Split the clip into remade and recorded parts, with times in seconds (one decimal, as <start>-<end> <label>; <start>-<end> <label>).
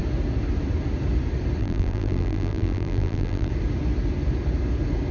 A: 0.0-1.6 recorded; 1.6-3.5 remade; 3.5-5.1 recorded